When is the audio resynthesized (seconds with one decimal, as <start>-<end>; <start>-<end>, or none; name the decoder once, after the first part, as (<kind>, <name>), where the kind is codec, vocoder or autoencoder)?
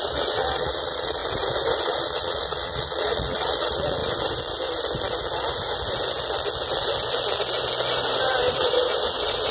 0.0-1.2 (vocoder, Vocos); 1.8-4.0; 8.5-9.5